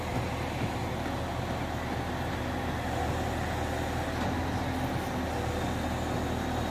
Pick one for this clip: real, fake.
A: real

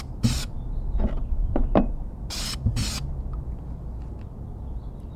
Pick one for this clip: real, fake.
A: real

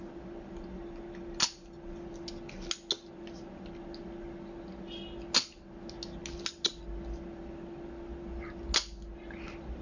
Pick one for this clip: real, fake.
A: real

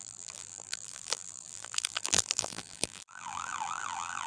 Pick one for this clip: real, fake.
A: fake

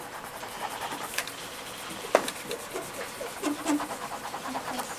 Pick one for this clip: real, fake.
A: fake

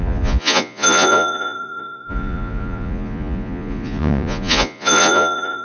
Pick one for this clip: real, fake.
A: fake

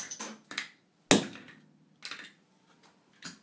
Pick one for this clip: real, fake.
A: real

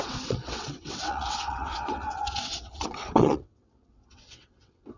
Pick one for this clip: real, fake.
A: fake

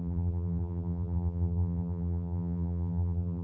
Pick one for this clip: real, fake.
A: fake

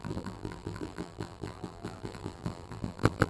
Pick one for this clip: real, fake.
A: fake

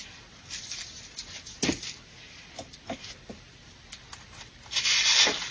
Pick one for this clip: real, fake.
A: real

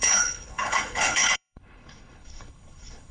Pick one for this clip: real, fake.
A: fake